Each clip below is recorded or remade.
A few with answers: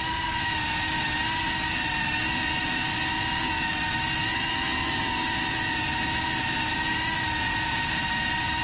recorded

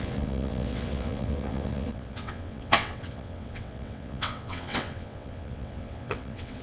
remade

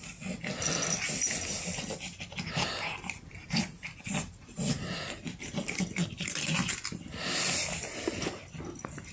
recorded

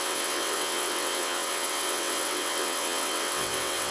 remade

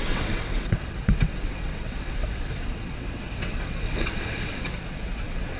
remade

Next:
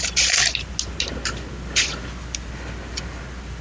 recorded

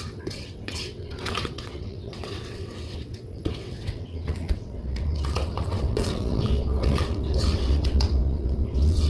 remade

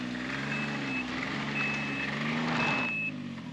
recorded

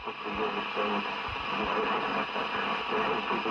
recorded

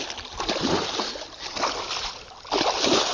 recorded